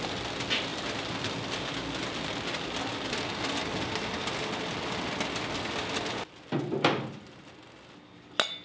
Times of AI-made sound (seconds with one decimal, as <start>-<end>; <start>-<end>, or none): none